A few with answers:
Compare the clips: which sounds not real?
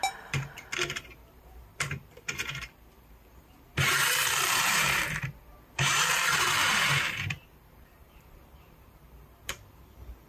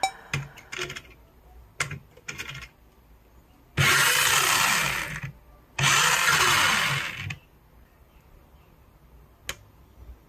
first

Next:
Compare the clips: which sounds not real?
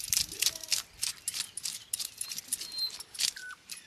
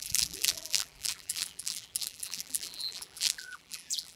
second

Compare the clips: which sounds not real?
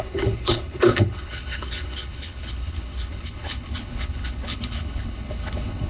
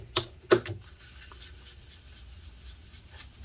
first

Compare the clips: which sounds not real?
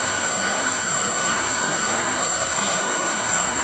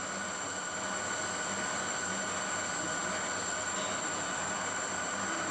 first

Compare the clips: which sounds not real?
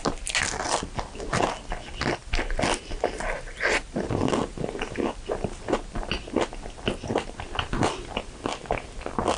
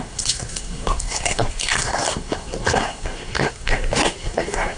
second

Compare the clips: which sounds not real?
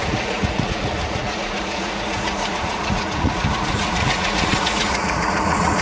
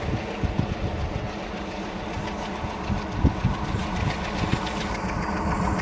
first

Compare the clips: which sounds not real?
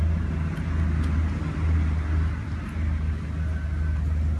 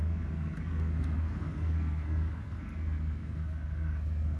second